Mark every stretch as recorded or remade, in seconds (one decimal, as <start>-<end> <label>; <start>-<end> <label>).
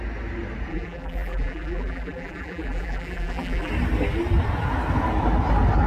0.0-0.7 recorded; 0.7-3.7 remade; 3.7-5.9 recorded